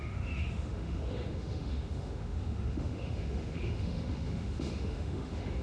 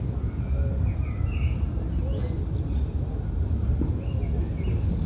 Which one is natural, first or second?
second